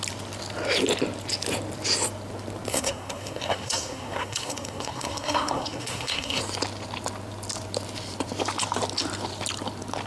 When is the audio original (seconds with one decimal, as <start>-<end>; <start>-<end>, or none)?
0.0-2.7; 6.4-10.1